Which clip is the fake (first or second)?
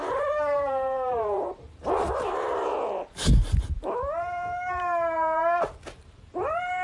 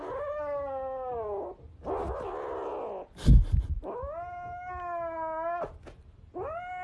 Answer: first